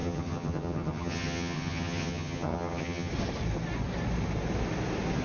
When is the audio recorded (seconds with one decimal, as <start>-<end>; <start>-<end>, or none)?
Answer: 3.1-5.2